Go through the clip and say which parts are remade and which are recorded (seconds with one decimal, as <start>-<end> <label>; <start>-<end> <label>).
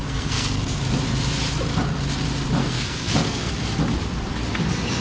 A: 0.0-0.8 remade; 0.8-2.6 recorded; 2.6-3.5 remade; 3.5-5.0 recorded